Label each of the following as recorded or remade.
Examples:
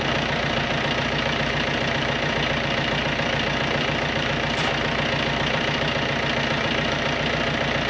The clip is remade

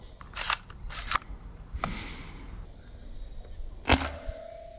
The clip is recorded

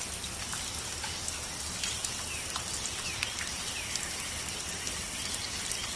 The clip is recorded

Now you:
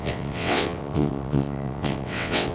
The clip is remade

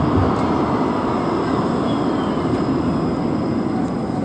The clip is recorded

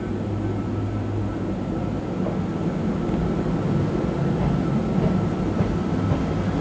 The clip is recorded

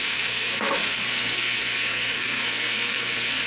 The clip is remade